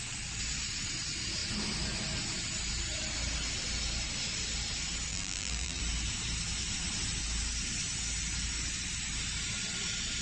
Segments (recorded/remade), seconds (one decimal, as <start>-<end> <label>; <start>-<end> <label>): 0.0-5.1 recorded; 5.1-5.8 remade; 5.8-10.2 recorded